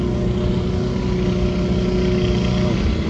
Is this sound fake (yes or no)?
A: no